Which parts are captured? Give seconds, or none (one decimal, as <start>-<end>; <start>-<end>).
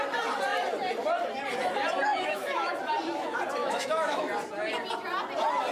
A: 0.0-2.1; 2.7-3.6; 4.3-5.7